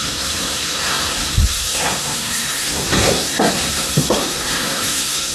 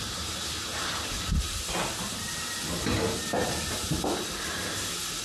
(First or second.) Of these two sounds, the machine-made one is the first